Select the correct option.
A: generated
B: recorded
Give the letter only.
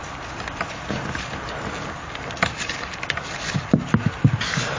B